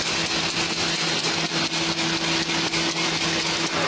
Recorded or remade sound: recorded